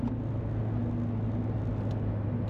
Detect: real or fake real